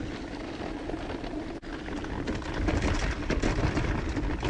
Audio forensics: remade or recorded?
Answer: recorded